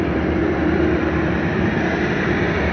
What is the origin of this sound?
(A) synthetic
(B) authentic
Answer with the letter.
A